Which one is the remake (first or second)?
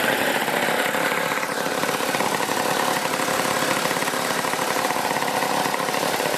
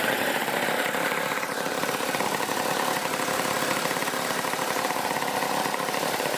second